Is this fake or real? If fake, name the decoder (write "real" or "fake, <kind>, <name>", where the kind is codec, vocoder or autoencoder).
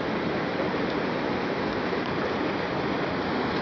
real